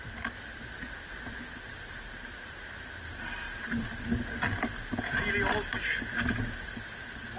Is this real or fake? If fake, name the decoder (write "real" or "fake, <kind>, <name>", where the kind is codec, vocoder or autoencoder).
real